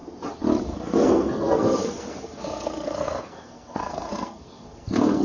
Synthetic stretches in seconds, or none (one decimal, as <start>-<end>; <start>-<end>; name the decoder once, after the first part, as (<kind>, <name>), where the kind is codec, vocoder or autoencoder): 0.6-5.2 (codec, SNAC)